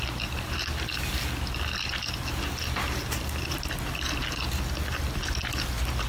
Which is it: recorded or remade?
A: recorded